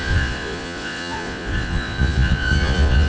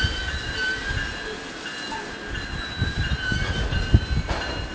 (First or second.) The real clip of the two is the second